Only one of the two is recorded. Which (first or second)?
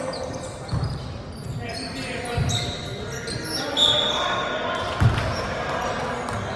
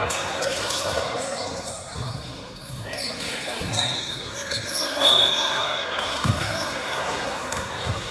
first